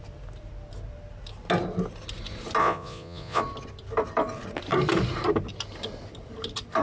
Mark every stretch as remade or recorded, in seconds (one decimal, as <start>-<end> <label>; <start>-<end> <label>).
0.0-2.6 recorded; 2.6-3.4 remade; 3.4-6.8 recorded